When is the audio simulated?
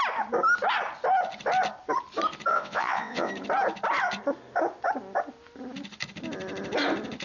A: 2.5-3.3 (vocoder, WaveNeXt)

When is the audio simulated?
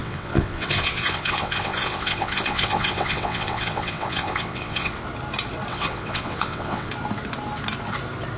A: 0.0-4.9 (vocoder, WaveNeXt); 5.7-6.9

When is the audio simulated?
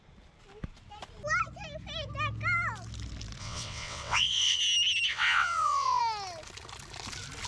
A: 3.4-4.6 (vocoder, WaveNeXt); 5.1-6.0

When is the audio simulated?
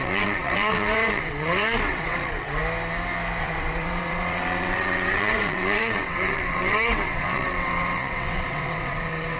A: 0.0-2.6 (vocoder, WaveNeXt); 3.4-9.4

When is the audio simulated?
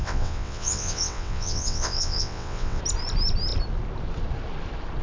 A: 0.0-2.8 (vocoder, WaveNeXt)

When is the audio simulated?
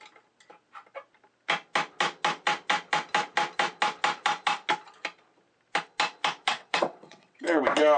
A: 6.5-7.6 (vocoder, WaveNeXt)